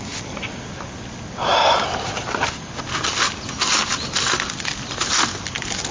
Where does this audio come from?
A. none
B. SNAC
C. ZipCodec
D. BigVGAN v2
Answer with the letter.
A